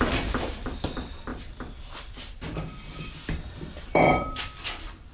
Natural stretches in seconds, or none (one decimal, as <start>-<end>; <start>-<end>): none